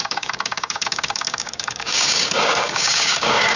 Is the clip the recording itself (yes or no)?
no